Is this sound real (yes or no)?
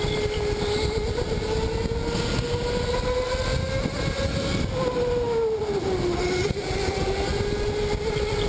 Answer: yes